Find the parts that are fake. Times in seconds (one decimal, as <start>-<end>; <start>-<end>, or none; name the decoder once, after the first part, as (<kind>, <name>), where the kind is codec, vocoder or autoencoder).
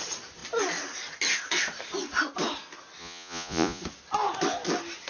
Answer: 3.0-3.8 (vocoder, Vocos)